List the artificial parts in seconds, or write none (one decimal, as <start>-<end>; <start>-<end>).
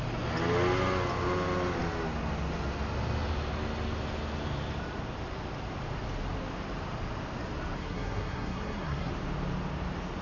7.8-9.1